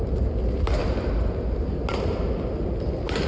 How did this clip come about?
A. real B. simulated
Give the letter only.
A